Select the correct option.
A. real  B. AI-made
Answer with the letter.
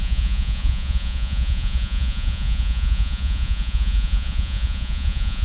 B